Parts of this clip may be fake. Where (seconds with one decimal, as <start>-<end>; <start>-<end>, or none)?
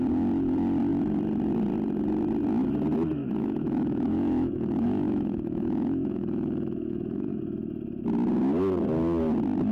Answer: 3.2-7.4